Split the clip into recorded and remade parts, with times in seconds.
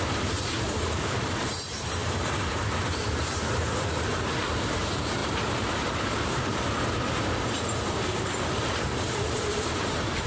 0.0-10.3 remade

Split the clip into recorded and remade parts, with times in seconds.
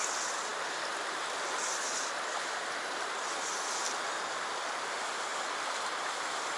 0.0-6.6 recorded